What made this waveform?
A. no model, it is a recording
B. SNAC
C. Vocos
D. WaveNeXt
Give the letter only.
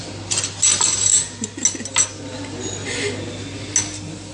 A